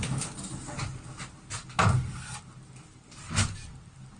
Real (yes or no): yes